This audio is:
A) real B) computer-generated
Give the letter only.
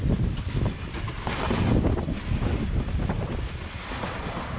A